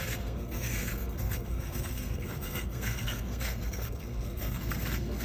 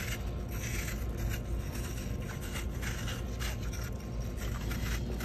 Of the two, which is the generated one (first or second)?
first